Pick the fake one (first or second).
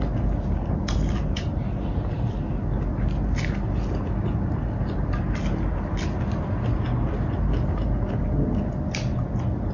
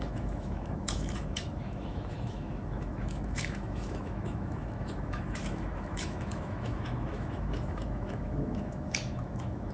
second